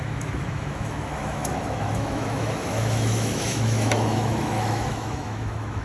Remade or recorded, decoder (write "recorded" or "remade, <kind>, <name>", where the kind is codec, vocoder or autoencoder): remade, autoencoder, DAC-VAE